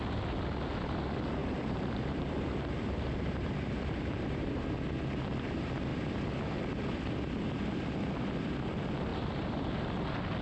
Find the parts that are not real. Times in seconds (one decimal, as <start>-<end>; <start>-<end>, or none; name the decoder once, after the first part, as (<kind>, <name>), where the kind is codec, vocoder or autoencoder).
1.4-4.6 (vocoder, BigVGAN v2); 9.1-9.7